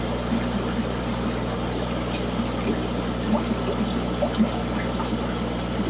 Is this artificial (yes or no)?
no